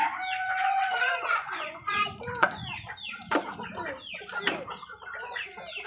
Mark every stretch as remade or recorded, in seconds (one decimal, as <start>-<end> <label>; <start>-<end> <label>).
0.0-0.4 recorded; 0.4-2.7 remade; 2.7-5.9 recorded